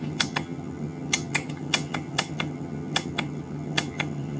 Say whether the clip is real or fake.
fake